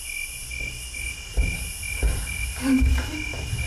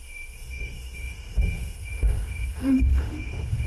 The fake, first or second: second